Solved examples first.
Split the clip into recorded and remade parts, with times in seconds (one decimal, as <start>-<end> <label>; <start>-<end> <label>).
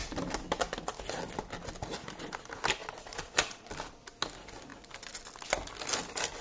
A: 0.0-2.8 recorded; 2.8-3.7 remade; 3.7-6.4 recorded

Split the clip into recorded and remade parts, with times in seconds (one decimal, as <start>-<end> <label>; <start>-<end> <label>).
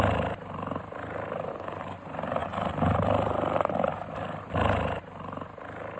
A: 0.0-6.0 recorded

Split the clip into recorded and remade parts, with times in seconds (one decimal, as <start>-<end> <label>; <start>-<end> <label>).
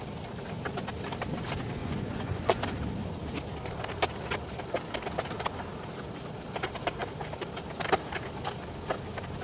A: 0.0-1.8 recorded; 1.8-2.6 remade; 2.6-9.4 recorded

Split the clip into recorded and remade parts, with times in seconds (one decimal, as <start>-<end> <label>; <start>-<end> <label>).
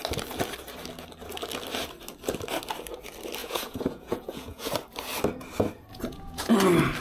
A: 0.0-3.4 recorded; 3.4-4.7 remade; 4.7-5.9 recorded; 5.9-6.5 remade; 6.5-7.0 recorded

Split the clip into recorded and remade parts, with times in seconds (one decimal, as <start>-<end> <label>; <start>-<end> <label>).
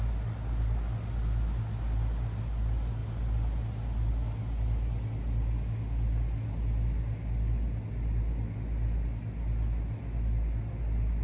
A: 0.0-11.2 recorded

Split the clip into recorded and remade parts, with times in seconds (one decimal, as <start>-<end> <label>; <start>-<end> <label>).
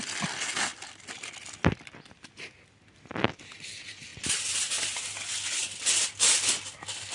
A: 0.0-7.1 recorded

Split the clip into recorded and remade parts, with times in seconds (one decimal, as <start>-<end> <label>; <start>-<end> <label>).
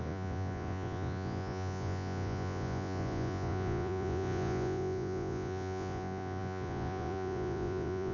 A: 0.0-8.1 remade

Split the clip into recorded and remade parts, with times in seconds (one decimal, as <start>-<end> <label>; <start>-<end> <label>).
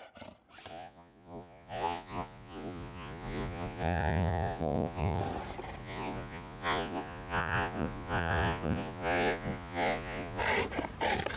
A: 0.0-0.7 recorded; 0.7-5.2 remade; 5.2-5.8 recorded; 5.8-10.4 remade; 10.4-11.4 recorded